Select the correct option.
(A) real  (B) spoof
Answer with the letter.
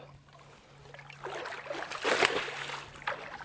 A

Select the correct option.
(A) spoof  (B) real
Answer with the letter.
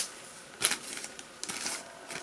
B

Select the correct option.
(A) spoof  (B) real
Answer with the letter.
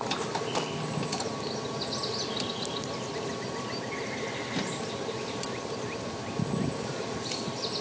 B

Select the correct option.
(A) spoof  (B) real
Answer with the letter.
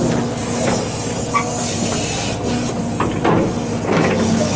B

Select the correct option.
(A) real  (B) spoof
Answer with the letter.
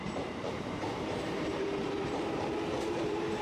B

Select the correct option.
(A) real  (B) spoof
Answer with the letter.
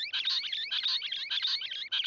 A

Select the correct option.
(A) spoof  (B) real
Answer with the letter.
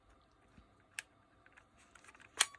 B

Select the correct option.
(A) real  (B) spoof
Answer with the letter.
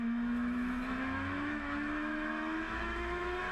B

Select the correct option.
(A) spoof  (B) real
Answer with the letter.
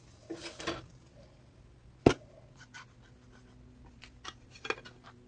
B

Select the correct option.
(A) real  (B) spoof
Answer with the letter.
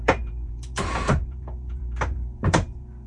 B